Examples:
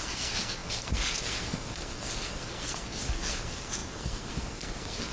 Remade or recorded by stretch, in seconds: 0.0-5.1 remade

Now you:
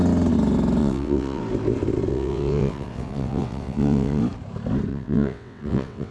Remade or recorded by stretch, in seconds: 0.0-0.8 recorded; 0.8-1.4 remade; 1.4-2.1 recorded; 2.1-4.2 remade; 4.2-4.9 recorded; 4.9-6.1 remade

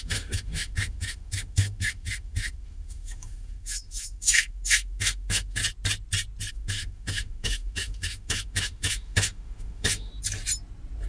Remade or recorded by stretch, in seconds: 0.0-5.6 remade; 5.6-6.5 recorded; 6.5-10.1 remade; 10.1-11.1 recorded